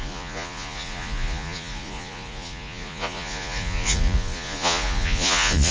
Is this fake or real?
fake